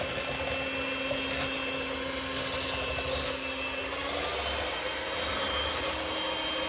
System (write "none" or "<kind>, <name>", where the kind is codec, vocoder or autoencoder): none